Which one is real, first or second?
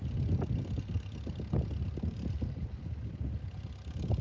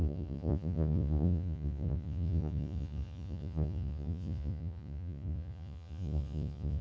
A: first